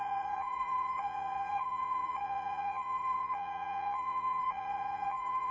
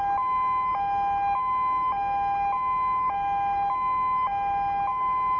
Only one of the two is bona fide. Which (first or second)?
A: second